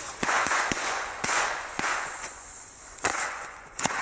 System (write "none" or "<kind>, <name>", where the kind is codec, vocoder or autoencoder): vocoder, Vocos